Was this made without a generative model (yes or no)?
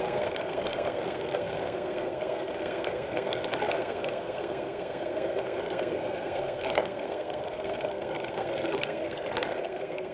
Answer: no